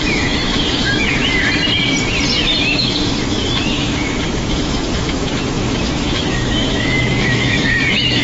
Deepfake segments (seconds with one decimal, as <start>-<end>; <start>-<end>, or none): 0.0-1.2; 2.6-8.2